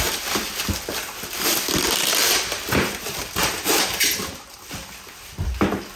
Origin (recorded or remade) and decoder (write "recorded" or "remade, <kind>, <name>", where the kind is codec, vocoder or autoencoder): recorded